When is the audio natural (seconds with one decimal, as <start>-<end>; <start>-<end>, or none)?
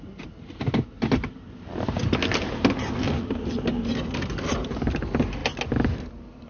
0.0-6.5